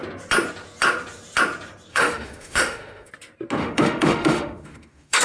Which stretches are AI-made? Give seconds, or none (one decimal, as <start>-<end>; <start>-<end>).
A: 1.9-3.1; 3.6-5.2